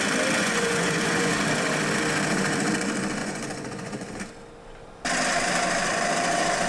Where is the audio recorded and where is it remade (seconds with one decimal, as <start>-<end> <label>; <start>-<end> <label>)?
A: 0.0-0.4 recorded; 0.4-1.3 remade; 1.3-3.2 recorded; 3.2-4.2 remade; 4.2-6.7 recorded